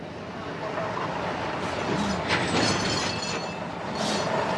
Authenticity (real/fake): real